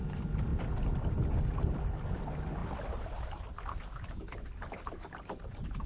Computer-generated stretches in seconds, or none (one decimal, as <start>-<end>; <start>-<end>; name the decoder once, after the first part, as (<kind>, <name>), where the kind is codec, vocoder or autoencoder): none